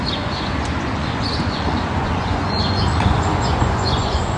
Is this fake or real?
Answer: fake